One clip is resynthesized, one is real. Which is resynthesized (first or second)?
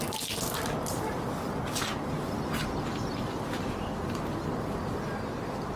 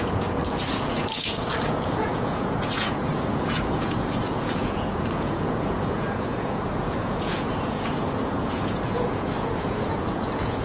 second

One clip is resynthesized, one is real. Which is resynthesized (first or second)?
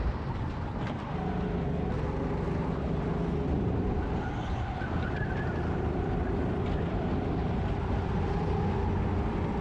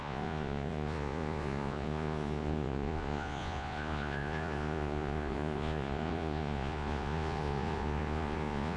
second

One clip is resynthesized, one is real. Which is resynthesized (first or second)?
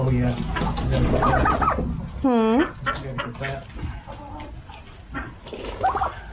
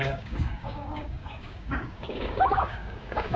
second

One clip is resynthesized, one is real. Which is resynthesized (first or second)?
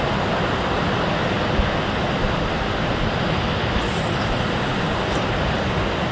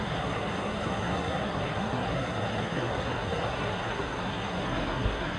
second